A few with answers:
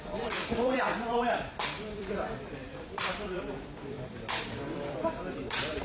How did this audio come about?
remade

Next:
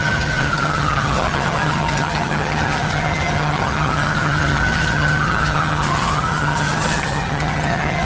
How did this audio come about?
remade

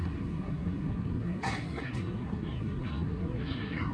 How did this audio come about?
remade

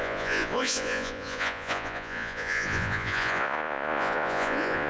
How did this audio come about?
remade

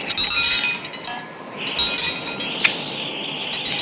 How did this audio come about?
recorded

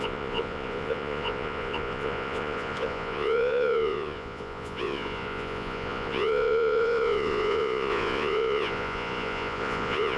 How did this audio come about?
remade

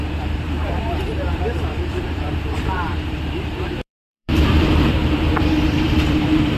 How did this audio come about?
remade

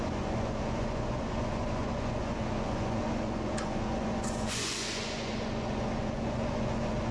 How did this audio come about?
remade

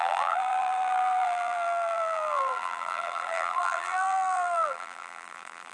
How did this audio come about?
remade